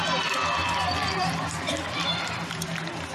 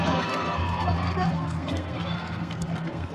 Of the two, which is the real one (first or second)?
first